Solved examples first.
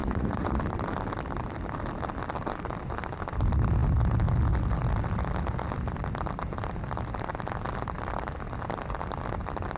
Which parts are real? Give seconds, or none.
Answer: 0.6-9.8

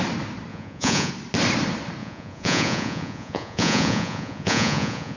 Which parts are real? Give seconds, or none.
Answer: 0.0-0.5; 1.1-2.0

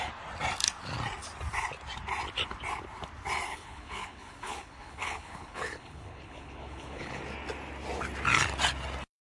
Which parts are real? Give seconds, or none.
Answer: 0.0-3.5; 7.2-9.2